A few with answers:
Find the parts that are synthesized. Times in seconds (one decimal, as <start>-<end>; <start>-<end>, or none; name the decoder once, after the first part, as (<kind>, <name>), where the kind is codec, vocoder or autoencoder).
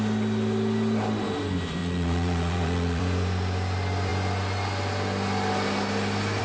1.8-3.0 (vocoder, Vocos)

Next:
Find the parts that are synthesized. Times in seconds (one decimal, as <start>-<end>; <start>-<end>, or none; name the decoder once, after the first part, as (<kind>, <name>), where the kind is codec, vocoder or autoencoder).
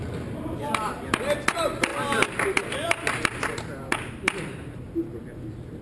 1.9-5.8 (vocoder, BigVGAN v2)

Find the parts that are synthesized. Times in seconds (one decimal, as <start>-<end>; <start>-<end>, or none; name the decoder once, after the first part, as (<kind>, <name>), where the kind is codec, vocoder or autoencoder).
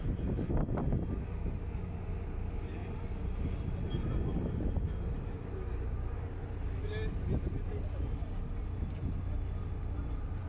none